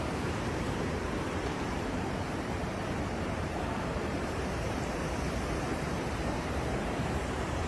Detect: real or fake fake